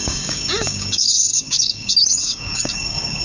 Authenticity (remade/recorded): remade